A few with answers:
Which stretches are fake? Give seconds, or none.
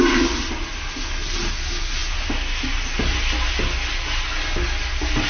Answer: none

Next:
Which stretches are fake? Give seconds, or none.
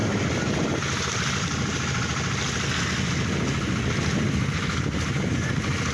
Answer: none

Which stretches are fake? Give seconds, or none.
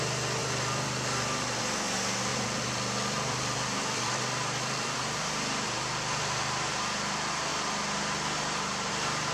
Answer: 0.4-1.6; 2.3-6.7; 7.5-8.9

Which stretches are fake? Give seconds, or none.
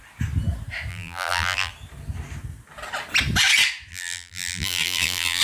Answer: 0.9-1.7; 3.9-5.4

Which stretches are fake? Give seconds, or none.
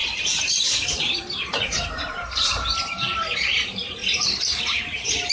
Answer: 0.0-4.0; 4.6-5.3